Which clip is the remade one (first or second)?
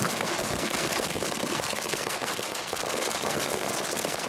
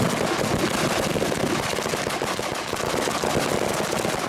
first